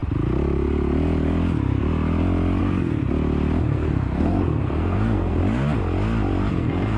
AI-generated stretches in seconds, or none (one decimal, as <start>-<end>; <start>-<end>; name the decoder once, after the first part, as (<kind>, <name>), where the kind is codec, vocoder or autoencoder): 2.6-3.0 (codec, SNAC); 3.6-5.4; 6.5-7.0